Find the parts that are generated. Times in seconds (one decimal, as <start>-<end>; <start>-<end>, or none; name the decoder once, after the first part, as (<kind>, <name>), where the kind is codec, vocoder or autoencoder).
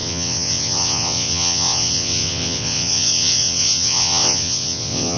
0.0-5.2 (vocoder, WaveNeXt)